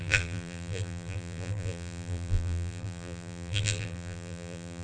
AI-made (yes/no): yes